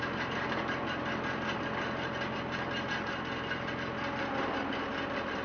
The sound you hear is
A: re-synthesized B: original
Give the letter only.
B